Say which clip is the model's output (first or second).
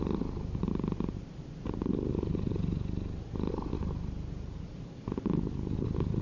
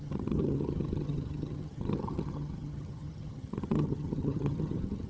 second